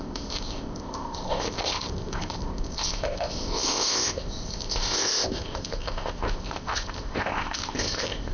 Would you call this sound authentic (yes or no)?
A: no